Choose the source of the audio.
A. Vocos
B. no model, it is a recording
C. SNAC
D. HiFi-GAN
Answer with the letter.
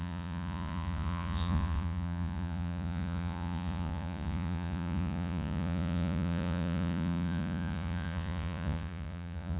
A